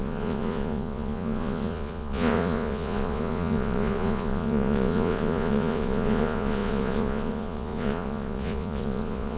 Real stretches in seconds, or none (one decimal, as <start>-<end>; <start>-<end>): none